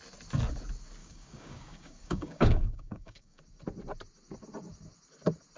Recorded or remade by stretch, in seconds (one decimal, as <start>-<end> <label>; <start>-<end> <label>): 0.0-1.0 recorded; 1.0-3.4 remade; 3.4-5.6 recorded